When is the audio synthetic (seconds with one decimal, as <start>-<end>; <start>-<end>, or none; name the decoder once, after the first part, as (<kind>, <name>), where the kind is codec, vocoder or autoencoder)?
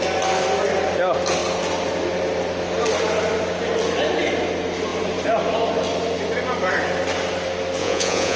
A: 7.8-8.4 (vocoder, Vocos)